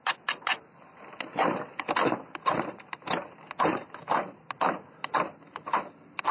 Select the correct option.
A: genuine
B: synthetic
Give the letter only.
A